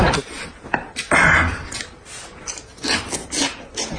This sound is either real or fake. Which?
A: real